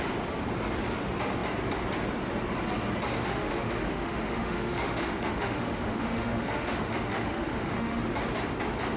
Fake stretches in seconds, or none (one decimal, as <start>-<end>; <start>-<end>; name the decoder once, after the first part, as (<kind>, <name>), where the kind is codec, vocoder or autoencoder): 3.1-8.0 (autoencoder, DAC-VAE)